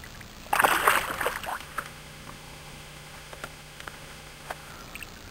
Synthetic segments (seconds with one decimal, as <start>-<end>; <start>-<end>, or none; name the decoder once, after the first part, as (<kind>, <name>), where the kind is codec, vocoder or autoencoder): 1.5-4.7 (autoencoder, DAC-VAE)